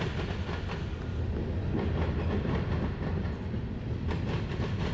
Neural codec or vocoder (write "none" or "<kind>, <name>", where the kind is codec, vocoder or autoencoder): none